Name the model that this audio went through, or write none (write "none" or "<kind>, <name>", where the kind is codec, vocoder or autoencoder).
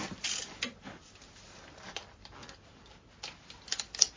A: none